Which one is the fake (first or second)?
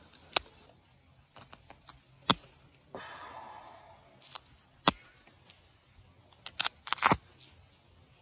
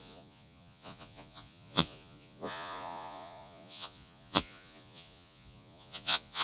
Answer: second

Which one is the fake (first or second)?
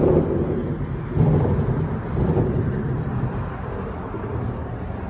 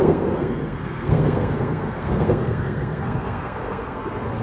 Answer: second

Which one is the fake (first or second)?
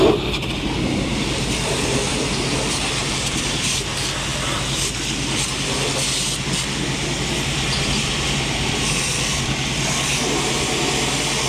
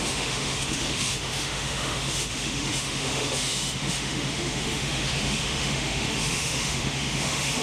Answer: second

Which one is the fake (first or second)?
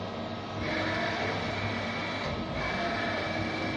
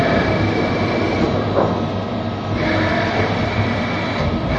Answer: second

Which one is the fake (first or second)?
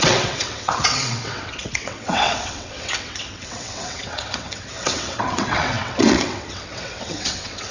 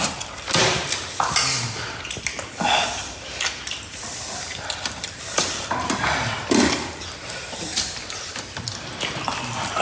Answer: first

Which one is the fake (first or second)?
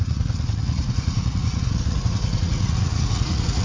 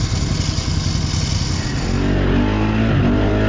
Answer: first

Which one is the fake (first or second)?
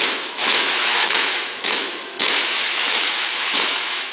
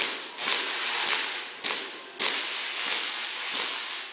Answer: first